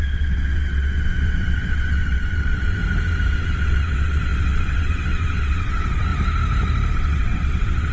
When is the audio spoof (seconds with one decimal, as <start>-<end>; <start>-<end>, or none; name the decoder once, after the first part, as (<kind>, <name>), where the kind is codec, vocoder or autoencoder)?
0.0-2.8 (vocoder, WaveNeXt); 3.3-6.1; 6.9-7.9